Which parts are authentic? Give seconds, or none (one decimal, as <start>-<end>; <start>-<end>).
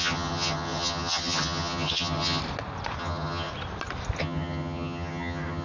2.4-3.0; 3.5-4.2